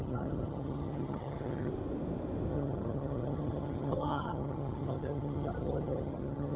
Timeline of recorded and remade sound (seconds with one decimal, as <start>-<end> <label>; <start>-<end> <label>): 0.0-1.7 remade; 1.7-2.5 recorded; 2.5-6.6 remade